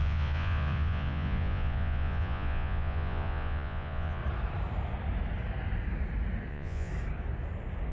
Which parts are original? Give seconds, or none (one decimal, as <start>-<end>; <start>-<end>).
4.2-6.5; 6.9-7.9